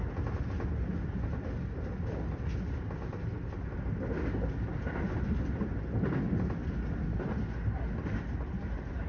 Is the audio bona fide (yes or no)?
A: yes